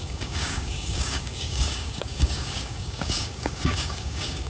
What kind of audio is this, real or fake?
fake